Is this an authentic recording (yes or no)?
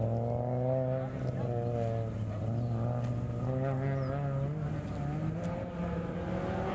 yes